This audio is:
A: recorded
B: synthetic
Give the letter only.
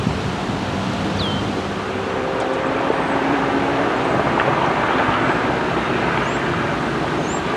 A